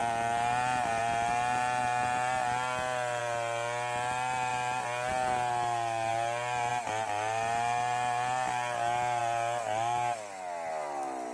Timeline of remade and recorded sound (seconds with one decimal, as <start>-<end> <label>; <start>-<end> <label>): 0.0-11.3 recorded